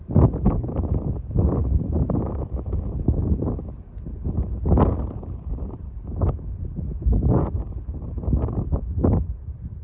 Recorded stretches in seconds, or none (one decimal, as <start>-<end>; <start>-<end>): 0.0-1.6; 2.9-9.8